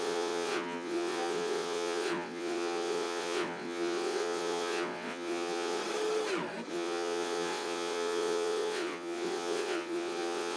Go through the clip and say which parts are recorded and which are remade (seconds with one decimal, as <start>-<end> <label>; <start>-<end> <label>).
0.0-5.8 remade; 5.8-6.7 recorded; 6.7-10.6 remade